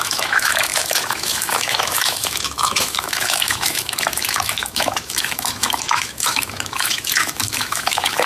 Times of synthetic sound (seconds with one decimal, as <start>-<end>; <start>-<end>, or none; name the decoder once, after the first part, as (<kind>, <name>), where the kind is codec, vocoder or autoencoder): 0.0-8.3 (autoencoder, DAC-VAE)